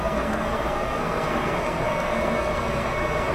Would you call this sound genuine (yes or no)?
no